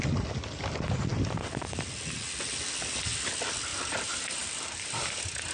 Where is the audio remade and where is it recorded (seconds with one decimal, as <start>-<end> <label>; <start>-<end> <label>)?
0.0-3.7 recorded; 3.7-5.5 remade